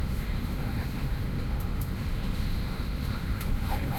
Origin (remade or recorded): remade